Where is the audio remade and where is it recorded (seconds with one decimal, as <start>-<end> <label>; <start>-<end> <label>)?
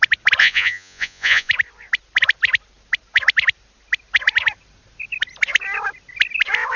0.0-0.4 recorded; 0.4-1.5 remade; 1.5-6.8 recorded